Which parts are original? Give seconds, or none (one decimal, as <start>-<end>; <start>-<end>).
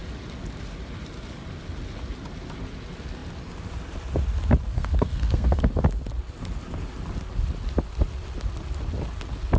0.0-4.7; 5.6-9.6